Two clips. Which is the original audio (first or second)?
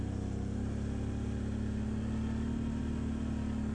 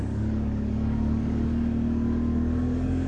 first